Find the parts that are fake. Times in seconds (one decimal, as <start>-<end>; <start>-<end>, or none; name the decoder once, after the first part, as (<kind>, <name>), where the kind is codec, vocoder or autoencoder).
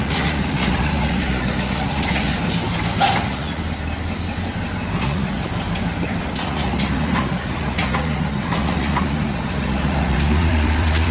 0.0-2.3 (vocoder, Vocos); 3.2-3.6; 5.0-5.5; 6.2-11.1